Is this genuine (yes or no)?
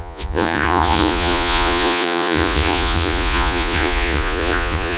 no